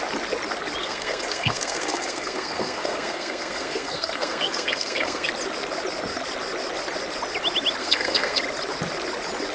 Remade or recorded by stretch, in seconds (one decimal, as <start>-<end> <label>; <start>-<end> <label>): 0.0-0.8 recorded; 0.8-5.3 remade; 5.3-7.8 recorded; 7.8-8.4 remade; 8.4-9.5 recorded